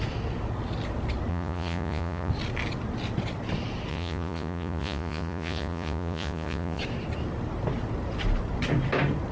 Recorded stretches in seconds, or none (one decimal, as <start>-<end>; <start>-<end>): 0.0-1.3; 2.3-3.9; 6.8-9.3